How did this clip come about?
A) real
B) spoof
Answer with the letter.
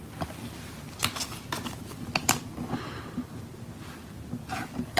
A